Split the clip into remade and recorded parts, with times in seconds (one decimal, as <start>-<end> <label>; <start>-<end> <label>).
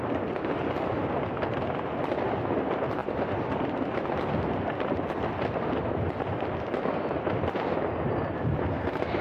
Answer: 0.0-8.6 recorded; 8.6-9.2 remade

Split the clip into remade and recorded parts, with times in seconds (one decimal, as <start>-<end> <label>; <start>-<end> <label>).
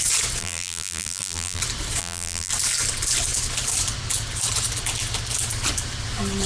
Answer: 0.0-0.4 recorded; 0.4-1.6 remade; 1.6-2.0 recorded; 2.0-2.5 remade; 2.5-6.5 recorded